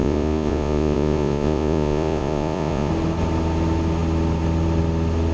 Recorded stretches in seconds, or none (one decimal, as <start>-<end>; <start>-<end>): 2.9-5.3